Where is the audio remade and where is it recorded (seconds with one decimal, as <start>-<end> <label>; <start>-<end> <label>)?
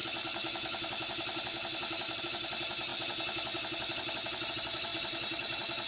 0.0-2.2 recorded; 2.2-2.9 remade; 2.9-4.5 recorded; 4.5-5.9 remade